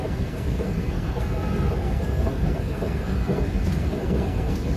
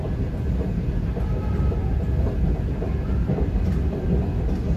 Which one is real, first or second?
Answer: second